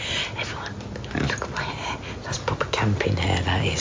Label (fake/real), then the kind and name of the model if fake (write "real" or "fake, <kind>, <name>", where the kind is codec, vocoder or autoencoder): real